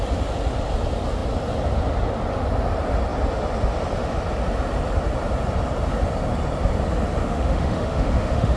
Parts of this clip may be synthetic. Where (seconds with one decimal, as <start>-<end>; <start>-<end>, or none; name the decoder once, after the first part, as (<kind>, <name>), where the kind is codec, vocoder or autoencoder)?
7.2-8.6 (autoencoder, DAC-VAE)

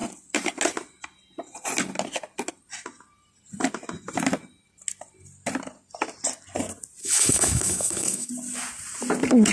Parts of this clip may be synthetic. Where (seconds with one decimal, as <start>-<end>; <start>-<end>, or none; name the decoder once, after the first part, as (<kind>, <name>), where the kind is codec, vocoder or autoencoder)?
7.0-8.3 (autoencoder, DAC-VAE)

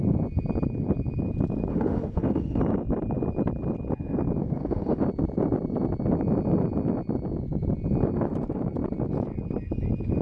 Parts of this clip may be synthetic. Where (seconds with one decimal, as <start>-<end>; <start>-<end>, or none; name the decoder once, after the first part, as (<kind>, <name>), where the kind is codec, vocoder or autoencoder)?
1.7-2.6 (autoencoder, DAC-VAE); 4.4-5.0

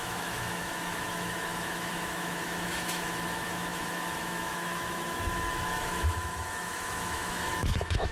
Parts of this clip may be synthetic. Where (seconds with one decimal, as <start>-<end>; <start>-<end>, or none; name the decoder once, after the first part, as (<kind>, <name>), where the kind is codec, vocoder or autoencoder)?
0.0-8.1 (autoencoder, DAC-VAE)

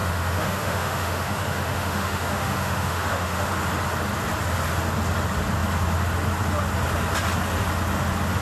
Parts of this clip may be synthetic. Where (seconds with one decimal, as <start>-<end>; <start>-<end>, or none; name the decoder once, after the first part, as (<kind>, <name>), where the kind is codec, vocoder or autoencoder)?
0.0-3.5 (autoencoder, DAC-VAE)